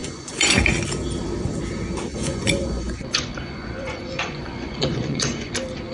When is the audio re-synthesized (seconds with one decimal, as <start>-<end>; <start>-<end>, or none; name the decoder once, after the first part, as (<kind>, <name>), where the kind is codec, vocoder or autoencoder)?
0.0-0.7 (vocoder, Vocos); 2.1-5.5